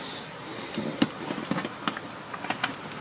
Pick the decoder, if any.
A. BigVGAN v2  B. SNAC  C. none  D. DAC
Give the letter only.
C